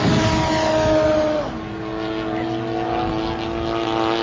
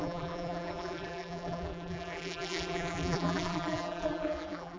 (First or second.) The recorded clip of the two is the first